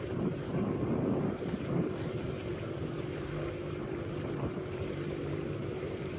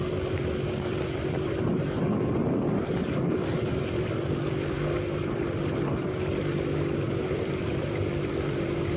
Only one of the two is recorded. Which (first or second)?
second